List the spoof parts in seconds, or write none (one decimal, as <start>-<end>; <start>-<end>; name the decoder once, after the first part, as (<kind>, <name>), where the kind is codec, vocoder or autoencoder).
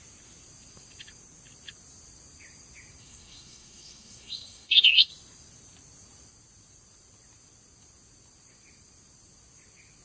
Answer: 3.0-5.1 (codec, SNAC)